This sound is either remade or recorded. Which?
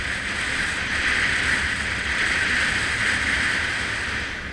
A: recorded